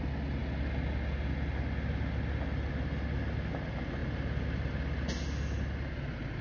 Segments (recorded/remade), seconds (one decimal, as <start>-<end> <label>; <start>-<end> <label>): 0.0-6.4 recorded